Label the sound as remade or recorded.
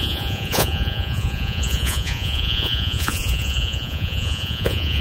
remade